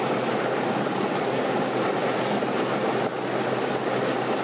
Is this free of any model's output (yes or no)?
yes